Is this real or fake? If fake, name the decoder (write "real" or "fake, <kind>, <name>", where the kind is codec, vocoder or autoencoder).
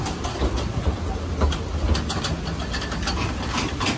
real